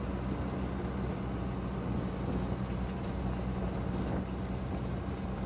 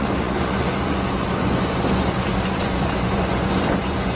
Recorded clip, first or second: first